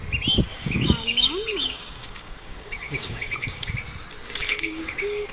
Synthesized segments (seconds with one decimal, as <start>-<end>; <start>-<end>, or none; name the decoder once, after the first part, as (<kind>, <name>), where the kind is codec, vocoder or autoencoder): 0.5-3.7 (codec, DAC); 4.4-5.3